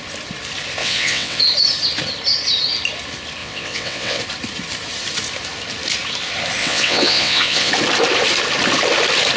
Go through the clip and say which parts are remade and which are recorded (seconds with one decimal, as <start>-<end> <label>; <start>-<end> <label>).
0.0-0.8 recorded; 0.8-1.4 remade; 1.4-3.4 recorded; 3.4-4.2 remade; 4.2-6.6 recorded; 6.6-7.7 remade; 7.7-9.4 recorded